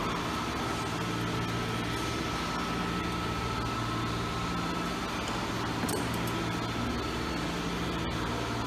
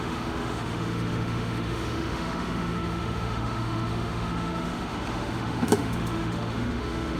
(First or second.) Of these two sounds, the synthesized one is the second